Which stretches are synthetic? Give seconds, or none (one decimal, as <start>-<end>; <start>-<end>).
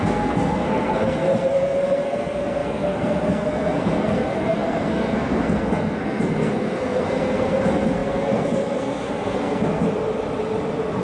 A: 0.0-9.8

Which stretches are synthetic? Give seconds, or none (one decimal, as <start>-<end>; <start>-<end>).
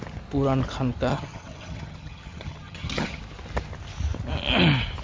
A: 1.1-3.2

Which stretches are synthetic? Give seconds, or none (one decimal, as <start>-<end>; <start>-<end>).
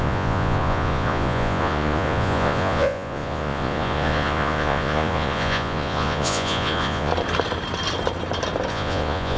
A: 0.0-7.1; 8.7-9.4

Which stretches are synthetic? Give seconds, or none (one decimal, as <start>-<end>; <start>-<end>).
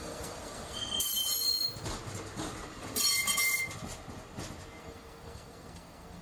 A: 0.0-1.1; 4.8-6.2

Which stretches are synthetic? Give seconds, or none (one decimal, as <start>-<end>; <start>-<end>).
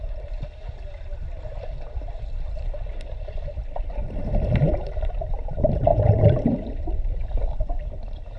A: 0.0-8.4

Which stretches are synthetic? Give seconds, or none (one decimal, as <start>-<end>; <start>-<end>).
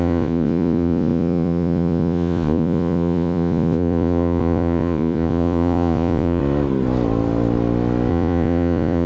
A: 0.0-6.4; 8.1-9.1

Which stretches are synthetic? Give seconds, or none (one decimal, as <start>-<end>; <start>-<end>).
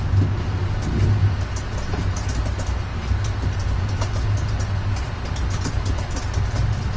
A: none